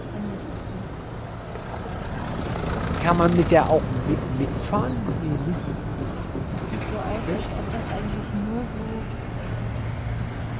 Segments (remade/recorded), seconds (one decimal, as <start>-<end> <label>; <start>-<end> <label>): 0.0-10.6 recorded